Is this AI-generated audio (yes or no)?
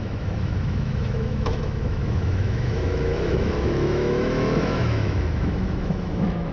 yes